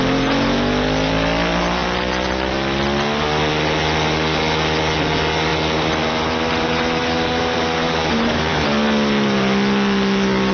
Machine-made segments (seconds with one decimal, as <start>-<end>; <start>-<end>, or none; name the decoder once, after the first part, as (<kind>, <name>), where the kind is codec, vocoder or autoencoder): 5.5-8.6 (vocoder, BigVGAN v2)